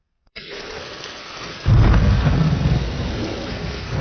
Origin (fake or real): fake